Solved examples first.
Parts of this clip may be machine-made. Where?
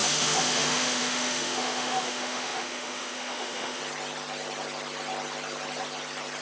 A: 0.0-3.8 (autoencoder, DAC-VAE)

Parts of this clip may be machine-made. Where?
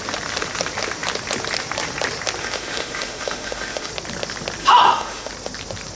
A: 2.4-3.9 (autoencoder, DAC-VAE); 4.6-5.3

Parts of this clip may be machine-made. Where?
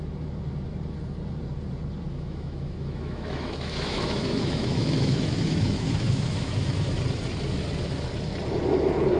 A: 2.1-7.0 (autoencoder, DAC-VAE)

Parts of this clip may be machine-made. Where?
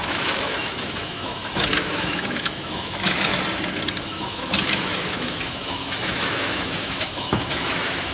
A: 0.0-3.3 (autoencoder, DAC-VAE); 4.0-8.1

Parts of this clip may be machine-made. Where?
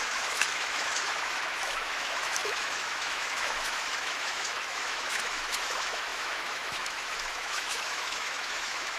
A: 0.0-9.0 (autoencoder, DAC-VAE)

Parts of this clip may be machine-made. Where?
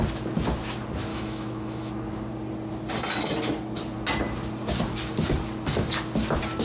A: 1.1-1.9 (autoencoder, DAC-VAE)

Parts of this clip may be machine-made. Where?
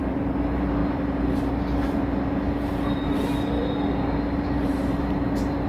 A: none